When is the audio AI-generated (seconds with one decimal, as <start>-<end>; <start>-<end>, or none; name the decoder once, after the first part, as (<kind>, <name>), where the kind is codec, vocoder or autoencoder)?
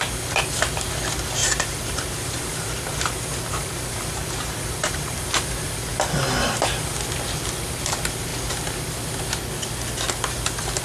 1.4-5.2 (vocoder, BigVGAN v2)